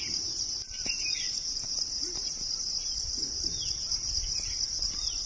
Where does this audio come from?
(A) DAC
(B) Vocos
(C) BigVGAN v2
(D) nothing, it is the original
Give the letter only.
C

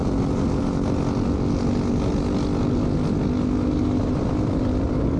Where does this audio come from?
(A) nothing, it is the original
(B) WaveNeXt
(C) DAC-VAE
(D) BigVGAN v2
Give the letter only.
A